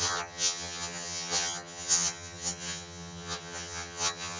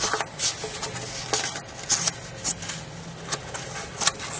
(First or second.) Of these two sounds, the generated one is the first